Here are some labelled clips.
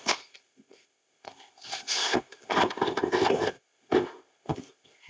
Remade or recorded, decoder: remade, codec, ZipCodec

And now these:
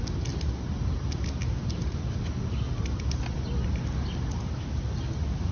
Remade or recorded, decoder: recorded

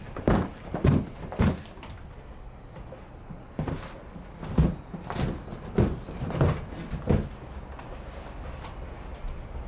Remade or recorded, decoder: recorded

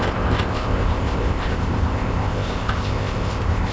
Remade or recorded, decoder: remade, codec, ZipCodec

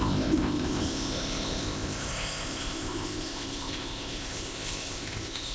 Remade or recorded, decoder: remade, codec, ZipCodec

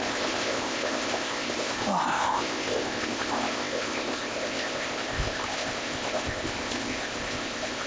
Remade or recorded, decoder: remade, codec, ZipCodec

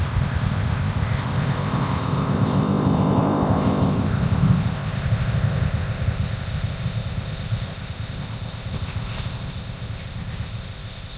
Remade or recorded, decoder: remade, codec, ZipCodec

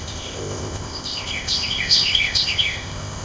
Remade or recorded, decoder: remade, codec, ZipCodec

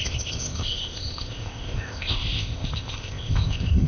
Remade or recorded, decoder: remade, codec, ZipCodec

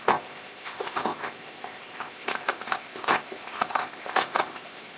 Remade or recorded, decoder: remade, codec, ZipCodec